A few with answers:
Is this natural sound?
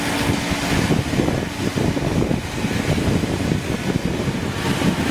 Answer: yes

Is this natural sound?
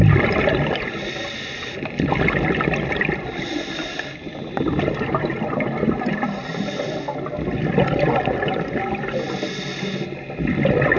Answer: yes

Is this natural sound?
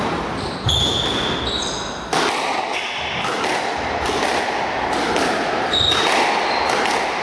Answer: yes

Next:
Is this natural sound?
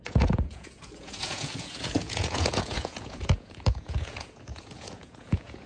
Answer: no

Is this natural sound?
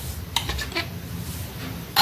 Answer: yes